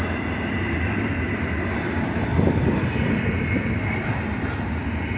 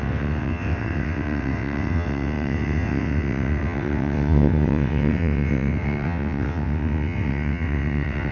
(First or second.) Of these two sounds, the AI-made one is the second